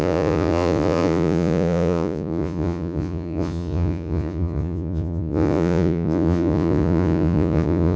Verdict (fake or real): fake